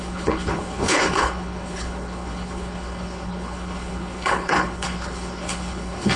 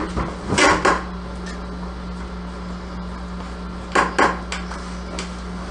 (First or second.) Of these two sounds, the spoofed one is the first